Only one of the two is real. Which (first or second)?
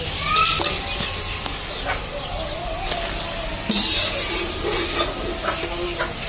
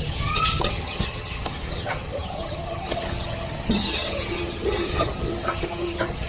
first